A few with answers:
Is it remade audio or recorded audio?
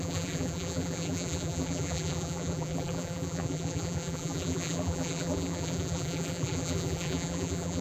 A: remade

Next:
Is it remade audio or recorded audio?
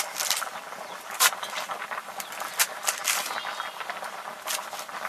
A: remade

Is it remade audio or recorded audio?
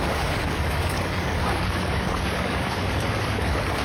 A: remade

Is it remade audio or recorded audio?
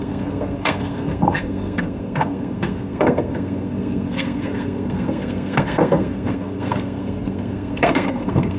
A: remade